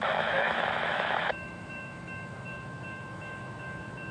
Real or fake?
fake